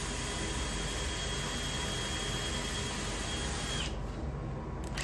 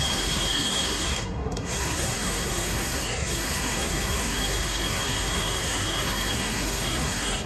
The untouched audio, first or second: first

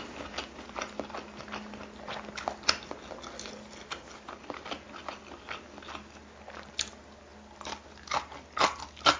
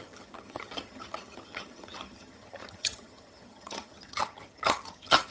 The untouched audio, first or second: first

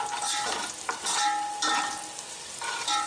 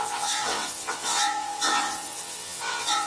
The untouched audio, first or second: first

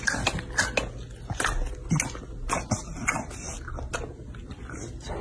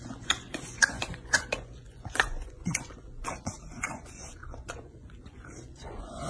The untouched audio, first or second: first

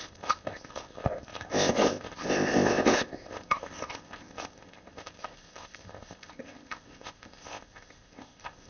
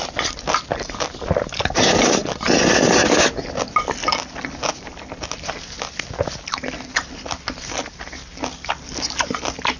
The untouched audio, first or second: second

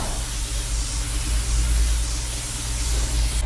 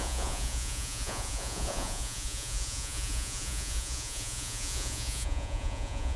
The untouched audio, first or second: first